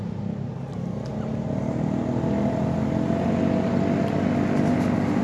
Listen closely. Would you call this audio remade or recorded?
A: recorded